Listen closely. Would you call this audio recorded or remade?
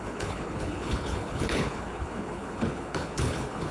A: remade